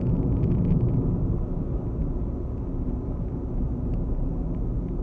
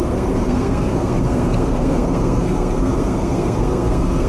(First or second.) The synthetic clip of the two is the second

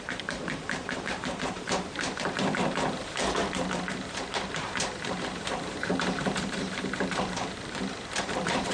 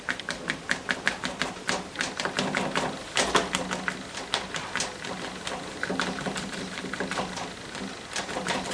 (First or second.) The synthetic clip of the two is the first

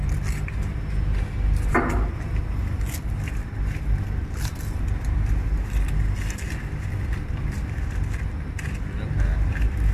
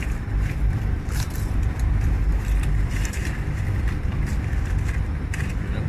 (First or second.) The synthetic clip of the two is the second